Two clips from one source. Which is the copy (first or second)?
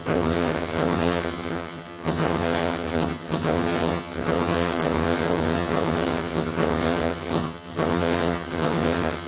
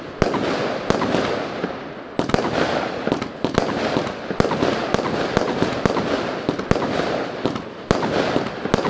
first